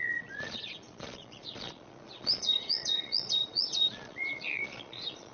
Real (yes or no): no